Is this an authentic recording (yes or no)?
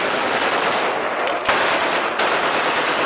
yes